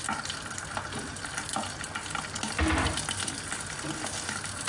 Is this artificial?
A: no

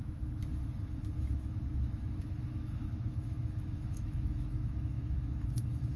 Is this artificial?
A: yes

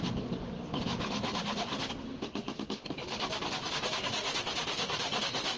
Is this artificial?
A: no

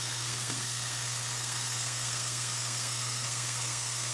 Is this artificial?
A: yes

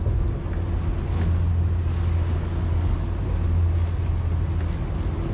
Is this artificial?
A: no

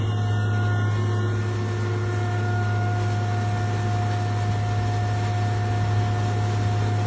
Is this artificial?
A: no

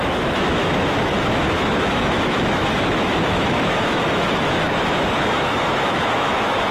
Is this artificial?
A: yes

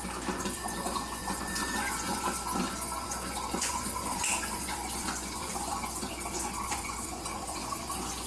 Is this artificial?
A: yes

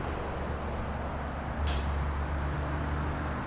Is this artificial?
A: no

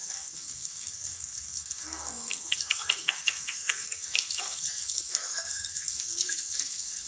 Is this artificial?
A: yes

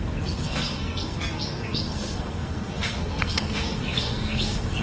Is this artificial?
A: yes